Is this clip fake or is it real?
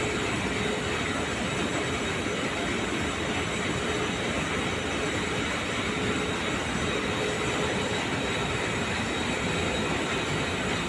real